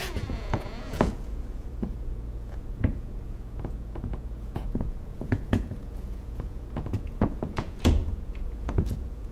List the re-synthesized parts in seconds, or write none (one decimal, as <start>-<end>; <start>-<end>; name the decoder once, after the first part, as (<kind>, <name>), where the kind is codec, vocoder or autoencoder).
0.0-9.3 (vocoder, Vocos)